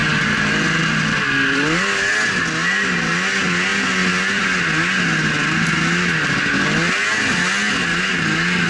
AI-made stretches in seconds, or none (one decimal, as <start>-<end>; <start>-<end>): none